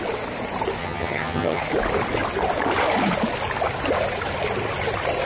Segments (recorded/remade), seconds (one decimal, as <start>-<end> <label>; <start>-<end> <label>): 0.0-0.8 recorded; 0.8-1.6 remade; 1.6-5.3 recorded